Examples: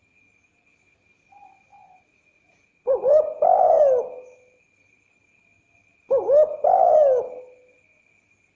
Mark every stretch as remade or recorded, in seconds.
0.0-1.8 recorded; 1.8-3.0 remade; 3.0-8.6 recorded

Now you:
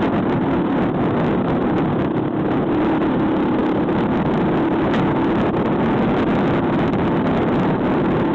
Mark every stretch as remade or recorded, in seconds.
0.0-8.3 recorded

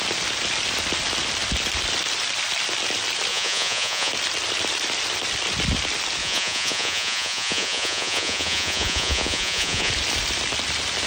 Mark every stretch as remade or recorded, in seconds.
0.0-3.3 recorded; 3.3-4.1 remade; 4.1-6.2 recorded; 6.2-9.9 remade; 9.9-11.1 recorded

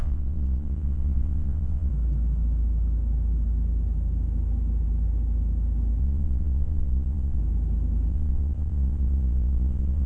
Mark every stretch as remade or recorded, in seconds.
0.0-1.9 remade; 1.9-6.0 recorded; 6.0-7.4 remade; 7.4-8.1 recorded; 8.1-10.1 remade

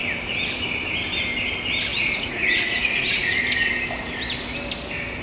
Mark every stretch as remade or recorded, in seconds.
0.0-1.9 recorded; 1.9-3.3 remade; 3.3-5.2 recorded

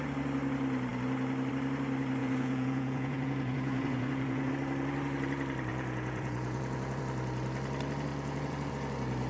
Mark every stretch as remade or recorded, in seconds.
0.0-2.2 recorded; 2.2-4.5 remade; 4.5-5.7 recorded; 5.7-7.0 remade; 7.0-8.1 recorded; 8.1-8.7 remade; 8.7-9.3 recorded

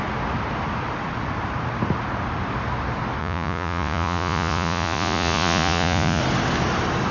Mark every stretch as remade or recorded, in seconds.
0.0-3.2 recorded; 3.2-6.2 remade; 6.2-7.1 recorded